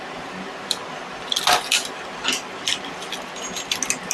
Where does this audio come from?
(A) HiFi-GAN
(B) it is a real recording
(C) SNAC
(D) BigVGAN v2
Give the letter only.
B